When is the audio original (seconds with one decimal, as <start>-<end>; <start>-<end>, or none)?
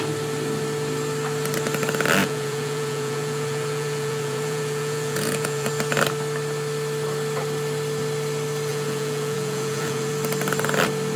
0.0-2.2; 5.7-8.7; 10.1-11.2